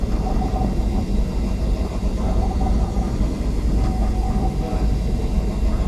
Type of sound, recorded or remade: recorded